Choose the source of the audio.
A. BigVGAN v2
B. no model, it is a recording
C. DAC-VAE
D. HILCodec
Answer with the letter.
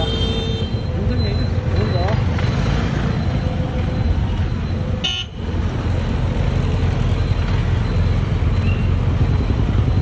B